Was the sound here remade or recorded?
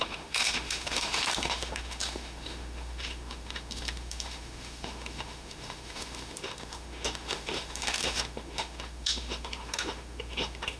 remade